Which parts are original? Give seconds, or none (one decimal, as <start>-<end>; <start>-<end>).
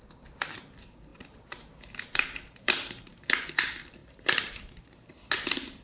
0.0-1.1; 3.5-4.0; 5.3-5.8